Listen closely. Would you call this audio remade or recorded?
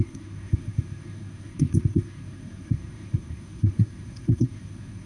remade